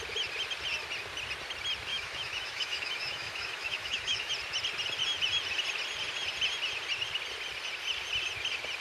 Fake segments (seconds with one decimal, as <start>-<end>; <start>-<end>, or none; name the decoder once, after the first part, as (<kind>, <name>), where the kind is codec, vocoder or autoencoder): 1.9-4.3 (autoencoder, DAC-VAE)